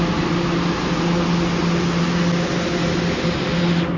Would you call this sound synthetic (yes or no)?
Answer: no